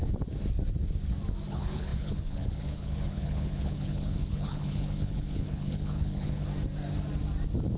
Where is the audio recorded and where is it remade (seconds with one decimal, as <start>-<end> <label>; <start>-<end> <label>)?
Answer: 0.0-1.5 recorded; 1.5-6.5 remade; 6.5-7.8 recorded